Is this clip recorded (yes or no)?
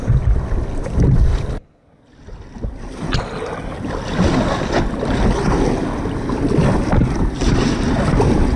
yes